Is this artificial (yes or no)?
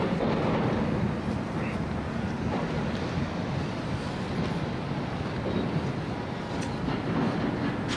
no